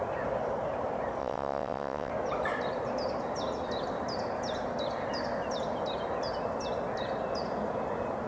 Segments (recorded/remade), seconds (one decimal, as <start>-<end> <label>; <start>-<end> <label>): 0.0-1.2 recorded; 1.2-2.1 remade; 2.1-8.3 recorded